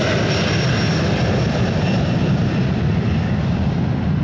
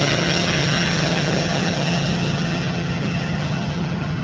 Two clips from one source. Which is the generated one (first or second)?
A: second